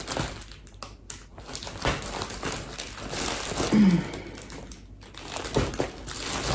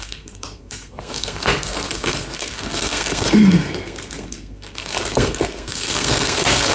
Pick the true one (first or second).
first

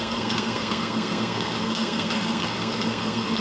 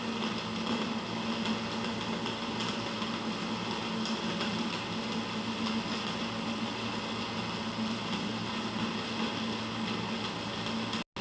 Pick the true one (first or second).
second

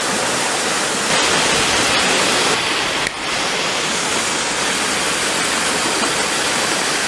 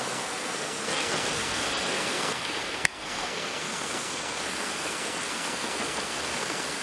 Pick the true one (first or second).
first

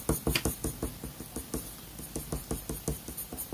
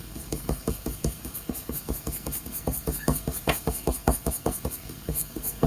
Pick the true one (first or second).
first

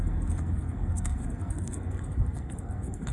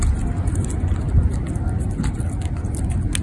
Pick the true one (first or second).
second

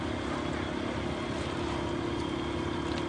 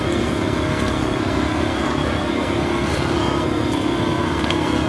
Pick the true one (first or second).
first